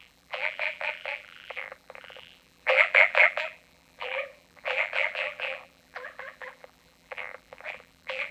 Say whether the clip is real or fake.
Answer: fake